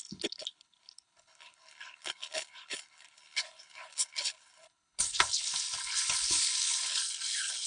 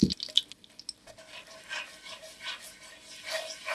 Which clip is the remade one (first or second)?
first